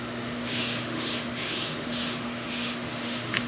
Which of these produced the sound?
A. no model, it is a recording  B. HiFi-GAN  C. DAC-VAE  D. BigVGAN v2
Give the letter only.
C